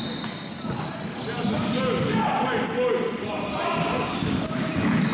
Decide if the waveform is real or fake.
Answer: real